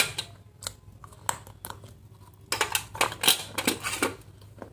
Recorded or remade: recorded